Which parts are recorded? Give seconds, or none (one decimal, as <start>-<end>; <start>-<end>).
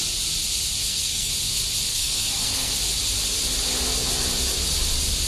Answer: 0.0-0.8; 1.3-1.9; 2.7-5.3